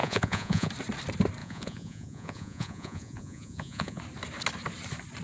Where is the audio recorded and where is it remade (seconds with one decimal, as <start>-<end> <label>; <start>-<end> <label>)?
0.0-0.7 remade; 0.7-1.4 recorded; 1.4-4.0 remade; 4.0-5.2 recorded